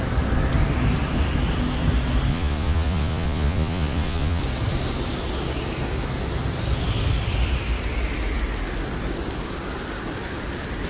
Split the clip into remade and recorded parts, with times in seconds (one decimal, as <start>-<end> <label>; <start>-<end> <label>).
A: 0.0-2.3 recorded; 2.3-4.4 remade; 4.4-10.9 recorded